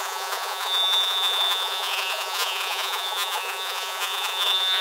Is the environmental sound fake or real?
fake